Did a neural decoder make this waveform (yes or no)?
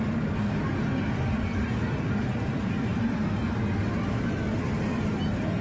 no